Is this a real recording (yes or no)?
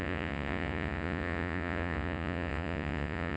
no